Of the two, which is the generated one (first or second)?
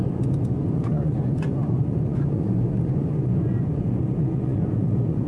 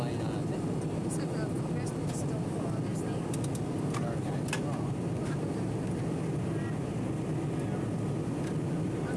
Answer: first